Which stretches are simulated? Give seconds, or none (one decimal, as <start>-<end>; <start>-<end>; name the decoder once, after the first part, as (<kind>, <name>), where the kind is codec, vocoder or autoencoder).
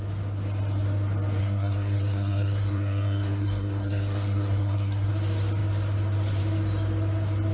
1.4-5.1 (codec, SNAC)